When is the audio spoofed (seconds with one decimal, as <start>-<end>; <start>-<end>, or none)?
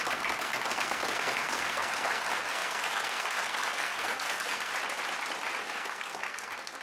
0.0-4.7; 5.6-6.8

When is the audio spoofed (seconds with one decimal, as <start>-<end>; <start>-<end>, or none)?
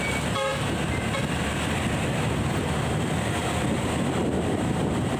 none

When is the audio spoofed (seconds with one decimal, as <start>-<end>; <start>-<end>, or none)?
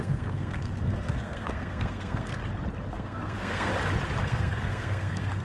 0.0-2.4; 2.9-3.7; 4.2-5.4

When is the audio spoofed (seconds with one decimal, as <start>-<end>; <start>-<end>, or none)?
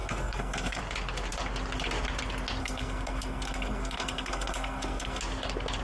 0.0-0.8; 2.6-5.2